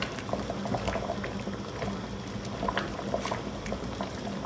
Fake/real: real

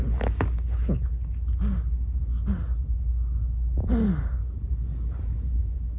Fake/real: real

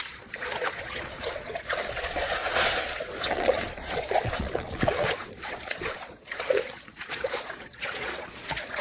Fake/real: fake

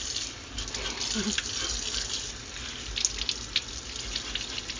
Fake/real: real